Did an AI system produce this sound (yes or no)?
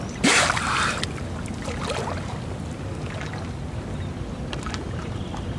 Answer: no